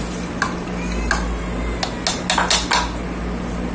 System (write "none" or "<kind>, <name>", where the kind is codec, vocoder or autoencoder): none